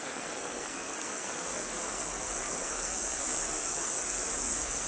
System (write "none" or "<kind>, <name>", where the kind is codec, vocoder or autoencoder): codec, SNAC